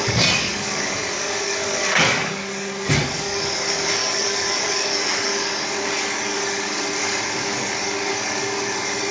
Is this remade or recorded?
remade